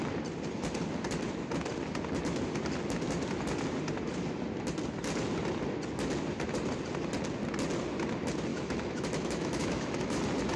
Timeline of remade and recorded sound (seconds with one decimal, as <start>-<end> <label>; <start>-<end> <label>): 0.0-8.5 recorded; 8.5-10.2 remade; 10.2-10.6 recorded

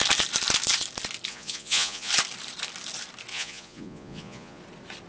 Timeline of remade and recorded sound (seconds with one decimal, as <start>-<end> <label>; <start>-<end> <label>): 0.0-1.3 recorded; 1.3-2.1 remade; 2.1-3.3 recorded; 3.3-4.6 remade; 4.6-5.1 recorded